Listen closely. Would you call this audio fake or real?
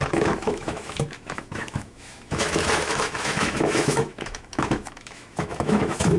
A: fake